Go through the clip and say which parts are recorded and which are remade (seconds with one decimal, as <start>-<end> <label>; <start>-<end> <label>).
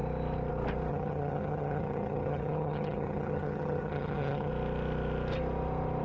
0.0-0.9 recorded; 0.9-4.5 remade; 4.5-6.0 recorded